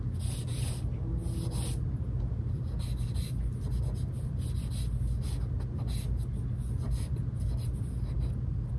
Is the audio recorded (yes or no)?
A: yes